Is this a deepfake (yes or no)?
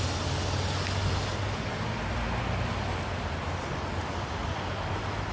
no